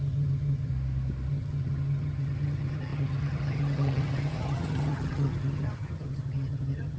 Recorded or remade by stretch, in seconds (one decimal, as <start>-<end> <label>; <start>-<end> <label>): 0.0-0.7 remade; 0.7-1.3 recorded; 1.3-7.0 remade